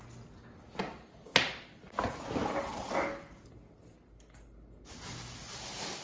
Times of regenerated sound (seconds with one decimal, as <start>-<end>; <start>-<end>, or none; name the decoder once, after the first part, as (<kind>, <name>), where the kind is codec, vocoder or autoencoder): none